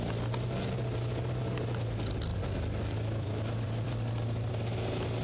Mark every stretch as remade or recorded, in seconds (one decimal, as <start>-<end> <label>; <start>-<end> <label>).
0.0-2.3 recorded; 2.3-4.5 remade; 4.5-5.2 recorded